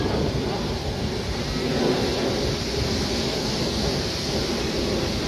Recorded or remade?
recorded